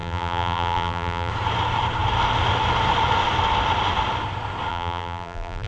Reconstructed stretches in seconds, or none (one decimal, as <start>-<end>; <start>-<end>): 0.0-1.3; 4.7-5.7